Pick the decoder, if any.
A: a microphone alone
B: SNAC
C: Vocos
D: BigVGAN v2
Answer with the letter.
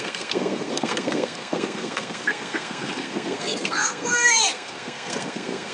B